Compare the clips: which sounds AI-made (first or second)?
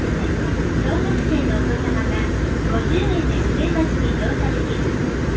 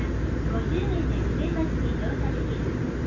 first